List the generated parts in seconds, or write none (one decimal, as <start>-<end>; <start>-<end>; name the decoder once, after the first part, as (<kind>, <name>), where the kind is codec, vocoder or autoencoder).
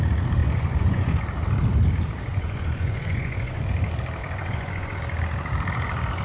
0.4-1.2 (vocoder, Vocos); 2.3-3.6; 4.2-5.0